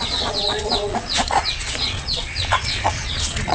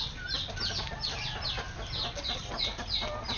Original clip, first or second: second